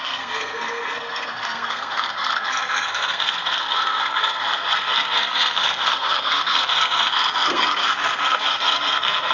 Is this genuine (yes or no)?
no